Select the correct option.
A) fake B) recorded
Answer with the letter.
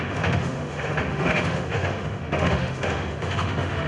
A